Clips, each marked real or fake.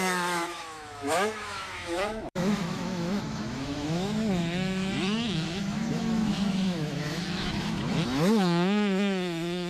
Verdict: fake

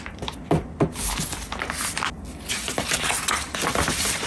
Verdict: real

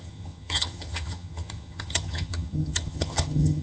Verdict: fake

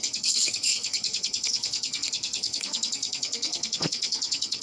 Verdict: fake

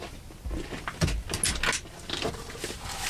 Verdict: real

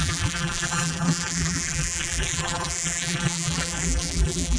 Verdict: fake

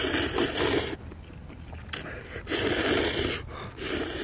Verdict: real